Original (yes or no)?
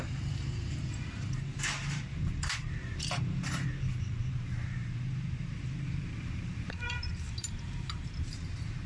no